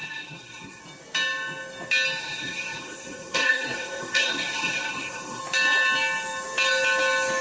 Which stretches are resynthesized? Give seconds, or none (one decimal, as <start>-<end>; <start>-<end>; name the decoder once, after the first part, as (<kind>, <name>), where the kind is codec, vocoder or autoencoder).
0.0-0.8 (codec, SNAC); 2.2-5.4